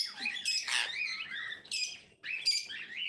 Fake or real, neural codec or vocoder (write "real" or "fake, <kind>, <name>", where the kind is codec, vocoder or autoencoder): real